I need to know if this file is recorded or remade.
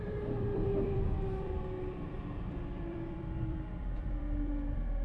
remade